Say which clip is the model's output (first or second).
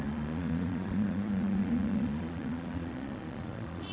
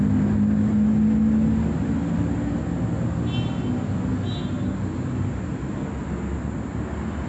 first